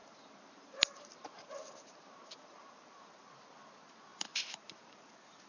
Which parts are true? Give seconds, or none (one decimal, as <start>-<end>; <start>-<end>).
3.3-4.3; 5.1-5.5